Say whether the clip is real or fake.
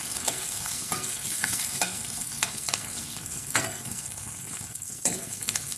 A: fake